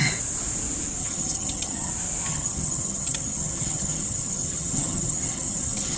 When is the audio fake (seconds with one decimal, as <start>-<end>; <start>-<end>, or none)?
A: 1.0-1.9; 2.3-6.0